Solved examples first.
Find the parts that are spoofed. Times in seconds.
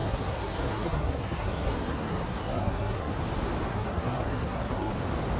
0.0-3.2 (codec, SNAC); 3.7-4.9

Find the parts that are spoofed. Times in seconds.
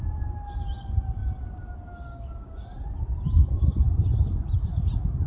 none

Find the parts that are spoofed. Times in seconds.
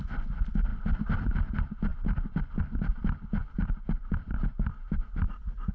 none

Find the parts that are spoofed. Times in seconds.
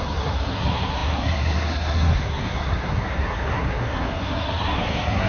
0.0-5.3 (codec, SNAC)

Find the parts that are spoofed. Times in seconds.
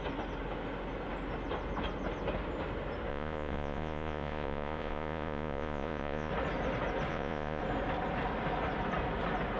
3.1-6.3 (vocoder, Vocos); 7.1-7.6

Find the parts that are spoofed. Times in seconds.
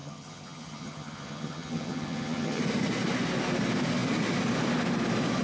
0.0-2.6 (vocoder, HiFi-GAN)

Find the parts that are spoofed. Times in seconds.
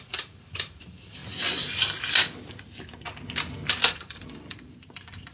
0.0-1.2 (vocoder, BigVGAN v2); 3.9-5.3